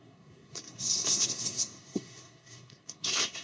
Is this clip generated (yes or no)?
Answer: yes